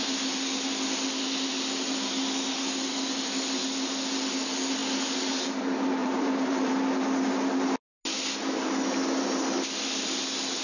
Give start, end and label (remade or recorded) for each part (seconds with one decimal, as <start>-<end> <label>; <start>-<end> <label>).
0.0-6.0 recorded; 6.0-6.7 remade; 6.7-10.6 recorded